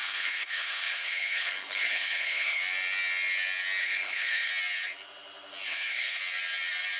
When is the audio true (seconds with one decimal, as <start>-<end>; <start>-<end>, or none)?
2.6-3.8; 4.5-5.7; 6.2-7.0